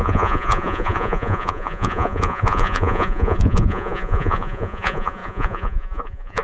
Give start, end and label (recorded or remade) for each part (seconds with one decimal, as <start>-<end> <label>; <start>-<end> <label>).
0.0-6.4 remade